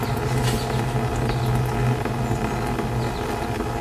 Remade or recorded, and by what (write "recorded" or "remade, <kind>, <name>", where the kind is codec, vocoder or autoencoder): recorded